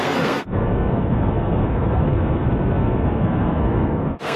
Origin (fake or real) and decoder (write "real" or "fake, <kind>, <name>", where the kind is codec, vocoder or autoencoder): fake, codec, SNAC